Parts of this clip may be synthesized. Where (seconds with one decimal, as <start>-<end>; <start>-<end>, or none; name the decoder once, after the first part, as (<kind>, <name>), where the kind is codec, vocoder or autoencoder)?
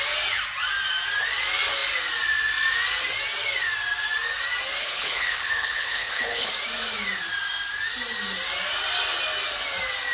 4.8-6.5 (codec, HILCodec)